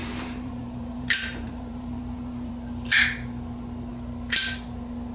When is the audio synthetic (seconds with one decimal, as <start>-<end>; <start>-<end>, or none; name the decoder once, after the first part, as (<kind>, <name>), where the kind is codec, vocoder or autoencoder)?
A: 0.0-2.5 (vocoder, BigVGAN v2)